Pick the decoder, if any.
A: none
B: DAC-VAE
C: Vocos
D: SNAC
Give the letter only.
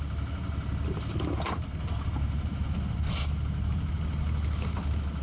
A